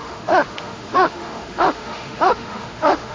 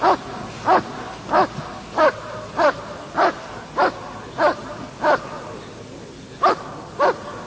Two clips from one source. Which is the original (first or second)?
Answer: second